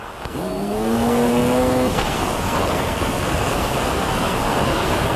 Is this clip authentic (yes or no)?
no